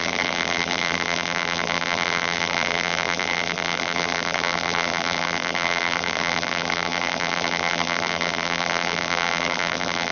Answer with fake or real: fake